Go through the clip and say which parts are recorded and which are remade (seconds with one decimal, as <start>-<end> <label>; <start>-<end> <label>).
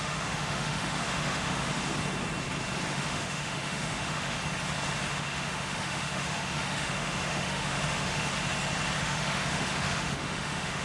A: 0.0-1.7 remade; 1.7-2.9 recorded; 2.9-4.4 remade; 4.4-5.1 recorded; 5.1-8.3 remade; 8.3-9.0 recorded; 9.0-10.8 remade